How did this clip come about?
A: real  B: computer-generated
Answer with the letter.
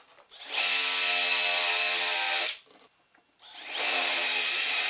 A